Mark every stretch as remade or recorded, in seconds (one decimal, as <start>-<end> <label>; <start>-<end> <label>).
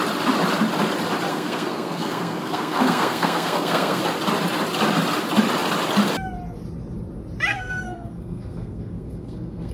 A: 0.0-1.3 recorded; 1.3-4.0 remade; 4.0-7.5 recorded; 7.5-9.7 remade